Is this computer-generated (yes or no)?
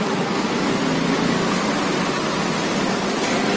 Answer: no